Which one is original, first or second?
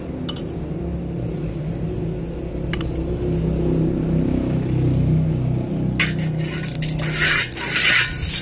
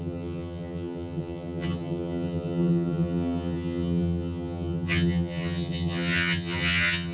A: first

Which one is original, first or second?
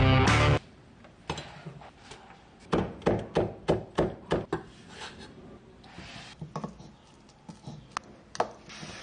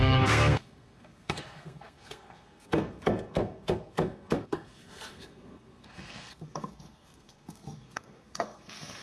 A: first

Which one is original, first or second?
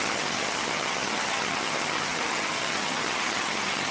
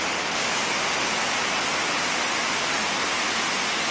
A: second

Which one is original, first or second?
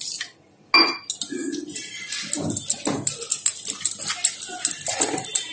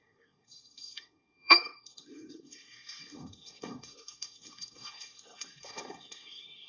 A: first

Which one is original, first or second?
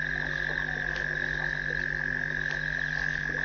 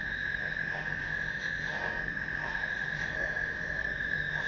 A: first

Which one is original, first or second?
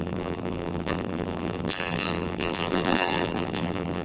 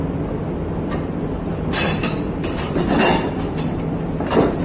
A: second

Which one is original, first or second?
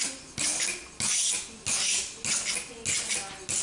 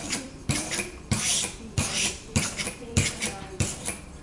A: first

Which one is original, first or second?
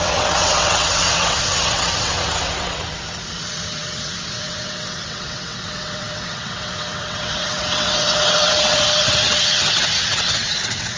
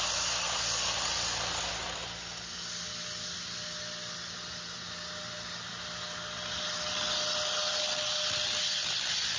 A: second